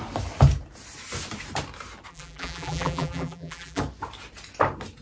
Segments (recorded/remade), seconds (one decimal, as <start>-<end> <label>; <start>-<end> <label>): 0.0-2.1 recorded; 2.1-3.8 remade; 3.8-5.0 recorded